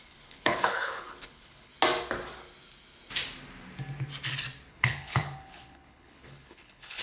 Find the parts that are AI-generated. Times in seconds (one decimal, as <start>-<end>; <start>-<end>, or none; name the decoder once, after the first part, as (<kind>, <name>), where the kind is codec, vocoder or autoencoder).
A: 0.0-1.7 (codec, HILCodec); 4.7-7.0